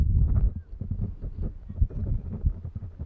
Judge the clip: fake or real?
real